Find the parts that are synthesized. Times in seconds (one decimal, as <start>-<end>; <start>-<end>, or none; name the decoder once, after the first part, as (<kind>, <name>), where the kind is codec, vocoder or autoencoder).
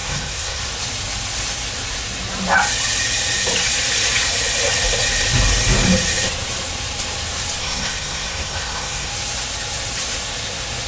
0.0-0.6 (codec, SNAC); 7.6-9.1